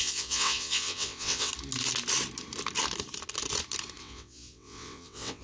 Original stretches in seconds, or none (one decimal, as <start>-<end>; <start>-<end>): 1.5-4.0